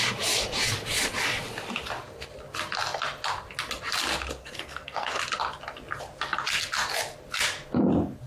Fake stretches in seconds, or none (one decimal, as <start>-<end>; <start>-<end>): 4.4-5.2